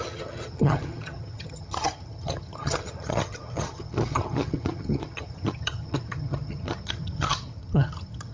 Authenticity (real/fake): fake